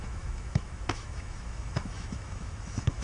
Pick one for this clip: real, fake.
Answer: fake